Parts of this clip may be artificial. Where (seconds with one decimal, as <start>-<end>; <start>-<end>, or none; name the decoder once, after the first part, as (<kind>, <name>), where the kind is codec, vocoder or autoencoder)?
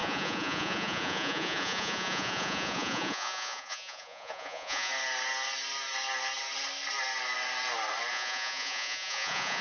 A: 0.0-4.9 (vocoder, Vocos); 8.1-9.6